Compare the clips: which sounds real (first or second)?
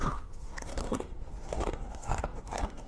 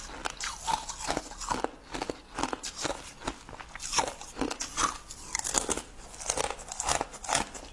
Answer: second